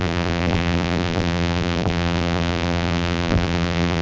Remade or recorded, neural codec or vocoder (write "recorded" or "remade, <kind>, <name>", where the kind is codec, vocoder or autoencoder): remade, vocoder, BigVGAN v2